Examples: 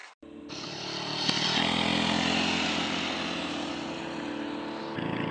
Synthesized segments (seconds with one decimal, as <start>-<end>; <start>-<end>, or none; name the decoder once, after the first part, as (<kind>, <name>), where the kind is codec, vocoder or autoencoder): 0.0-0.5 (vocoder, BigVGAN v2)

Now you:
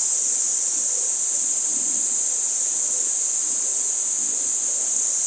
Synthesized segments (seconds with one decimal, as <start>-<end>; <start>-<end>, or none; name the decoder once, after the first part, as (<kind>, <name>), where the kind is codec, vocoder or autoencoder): 0.5-2.4 (vocoder, BigVGAN v2)

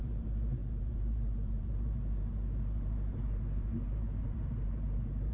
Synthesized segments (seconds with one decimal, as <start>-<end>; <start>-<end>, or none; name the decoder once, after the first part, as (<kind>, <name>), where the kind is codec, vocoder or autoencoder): 0.0-5.3 (vocoder, BigVGAN v2)

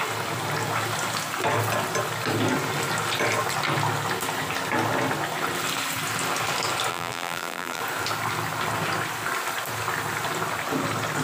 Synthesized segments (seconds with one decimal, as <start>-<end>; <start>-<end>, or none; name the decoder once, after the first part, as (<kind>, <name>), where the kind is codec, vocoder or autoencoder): 6.9-7.8 (vocoder, BigVGAN v2)

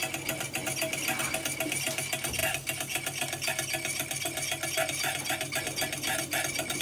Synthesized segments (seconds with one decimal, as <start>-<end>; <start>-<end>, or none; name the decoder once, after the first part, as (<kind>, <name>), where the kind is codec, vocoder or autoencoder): none